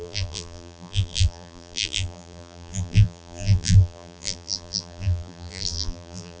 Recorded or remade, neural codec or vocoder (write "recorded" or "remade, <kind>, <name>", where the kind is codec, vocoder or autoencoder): remade, vocoder, BigVGAN v2